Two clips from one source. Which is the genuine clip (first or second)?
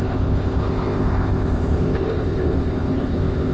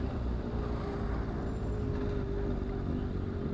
second